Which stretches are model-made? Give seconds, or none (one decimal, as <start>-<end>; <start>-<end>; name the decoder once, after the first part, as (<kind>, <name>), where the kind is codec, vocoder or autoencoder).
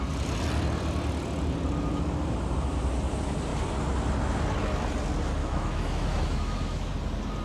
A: 5.4-6.9 (autoencoder, DAC-VAE)